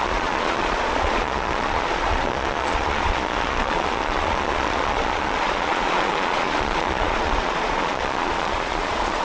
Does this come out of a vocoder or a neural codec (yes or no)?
yes